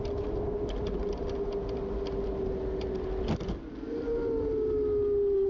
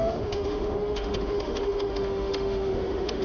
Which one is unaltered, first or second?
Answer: first